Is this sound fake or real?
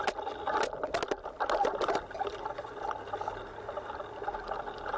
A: real